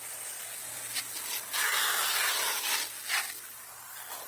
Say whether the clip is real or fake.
real